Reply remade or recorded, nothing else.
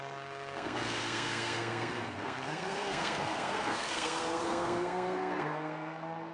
remade